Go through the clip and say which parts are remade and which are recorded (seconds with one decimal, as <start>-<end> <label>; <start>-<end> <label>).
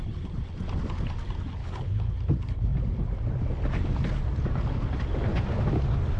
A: 0.0-1.6 recorded; 1.6-2.1 remade; 2.1-6.2 recorded